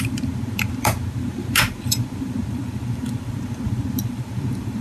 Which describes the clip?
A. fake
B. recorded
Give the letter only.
A